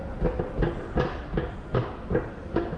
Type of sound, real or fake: real